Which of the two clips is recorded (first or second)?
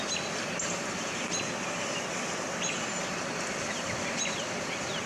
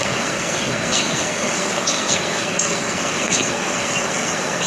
first